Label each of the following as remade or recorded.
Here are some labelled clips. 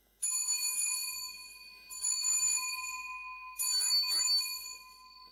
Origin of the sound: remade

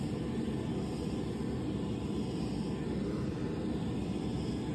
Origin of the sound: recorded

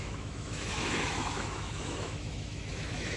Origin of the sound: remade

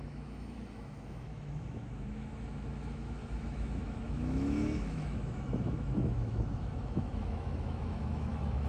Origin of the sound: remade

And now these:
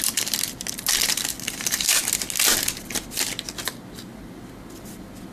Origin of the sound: recorded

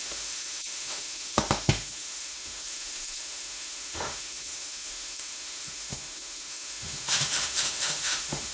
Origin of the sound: remade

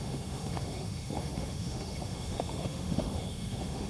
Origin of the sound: remade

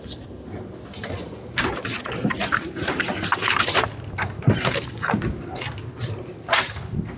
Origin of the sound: recorded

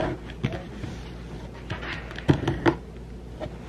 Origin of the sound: recorded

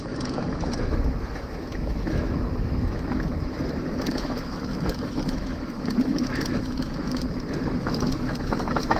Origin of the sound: remade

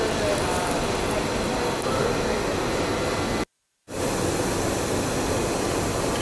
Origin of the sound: recorded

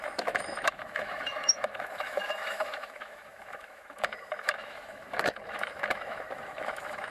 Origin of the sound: remade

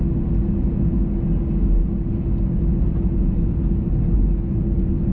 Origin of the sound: recorded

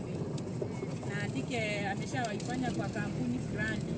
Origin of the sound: recorded